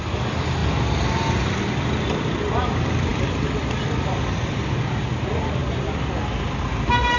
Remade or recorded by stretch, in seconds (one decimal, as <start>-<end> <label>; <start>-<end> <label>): 0.0-7.2 recorded